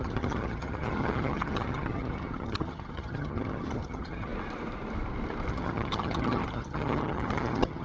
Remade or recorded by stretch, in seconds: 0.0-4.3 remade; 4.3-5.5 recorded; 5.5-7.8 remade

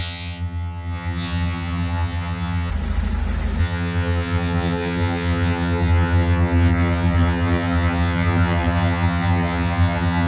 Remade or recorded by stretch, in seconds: 0.0-2.7 remade; 2.7-3.6 recorded; 3.6-10.3 remade

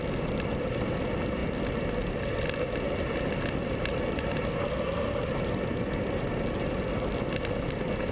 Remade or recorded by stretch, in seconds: 0.0-8.1 recorded

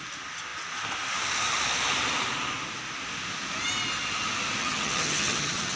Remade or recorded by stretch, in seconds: 0.0-4.6 recorded; 4.6-5.8 remade